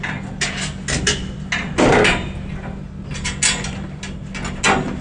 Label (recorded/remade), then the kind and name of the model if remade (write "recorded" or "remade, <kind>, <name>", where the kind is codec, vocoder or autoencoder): recorded